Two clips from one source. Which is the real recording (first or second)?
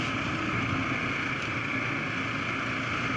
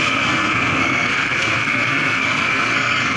first